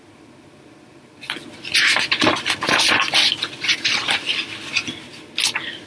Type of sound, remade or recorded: recorded